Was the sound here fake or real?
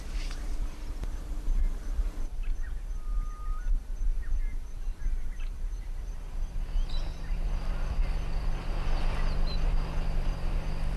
real